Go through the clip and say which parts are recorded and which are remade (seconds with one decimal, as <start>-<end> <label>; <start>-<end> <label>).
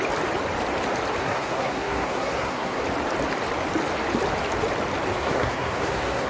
0.0-1.2 recorded; 1.2-2.8 remade; 2.8-5.2 recorded; 5.2-6.3 remade